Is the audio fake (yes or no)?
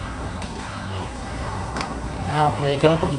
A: yes